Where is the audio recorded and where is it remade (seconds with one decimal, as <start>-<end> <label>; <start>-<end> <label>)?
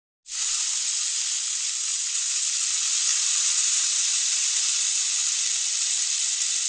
0.0-1.9 recorded; 1.9-2.4 remade; 2.4-3.1 recorded; 3.1-4.6 remade; 4.6-6.7 recorded